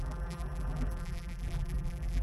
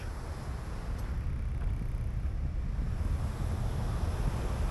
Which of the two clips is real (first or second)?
second